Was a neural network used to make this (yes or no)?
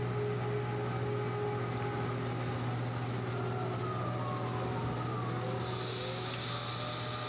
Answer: no